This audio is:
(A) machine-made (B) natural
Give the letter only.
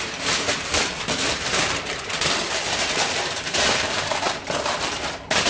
A